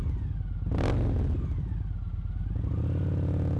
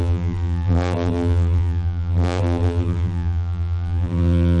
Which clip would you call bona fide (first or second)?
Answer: first